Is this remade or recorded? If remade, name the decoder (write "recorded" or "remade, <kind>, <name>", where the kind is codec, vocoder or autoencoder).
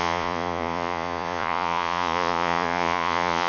remade, vocoder, Vocos